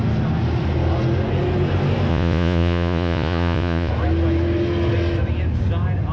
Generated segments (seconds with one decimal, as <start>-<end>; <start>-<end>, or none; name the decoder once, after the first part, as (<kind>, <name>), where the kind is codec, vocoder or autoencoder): 2.1-3.9 (vocoder, Vocos)